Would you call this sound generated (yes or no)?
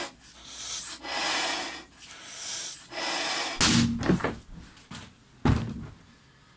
no